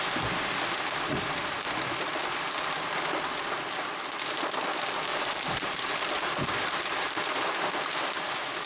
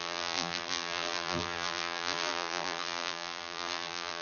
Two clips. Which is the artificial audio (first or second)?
second